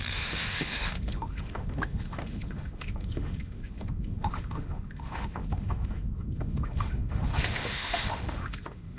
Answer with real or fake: fake